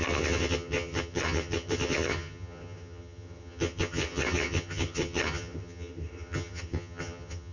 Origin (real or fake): fake